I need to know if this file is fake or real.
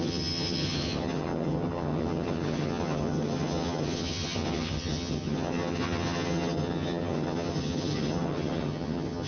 fake